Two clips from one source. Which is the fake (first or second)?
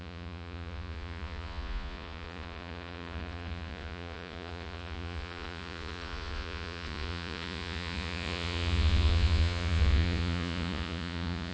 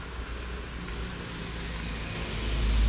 first